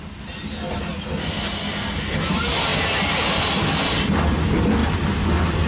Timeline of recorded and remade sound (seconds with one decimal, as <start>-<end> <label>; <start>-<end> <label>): 0.0-5.7 recorded